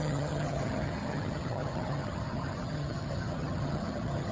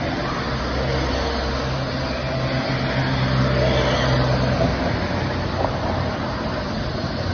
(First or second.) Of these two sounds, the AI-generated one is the first